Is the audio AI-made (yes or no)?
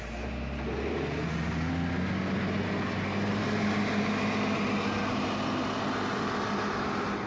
no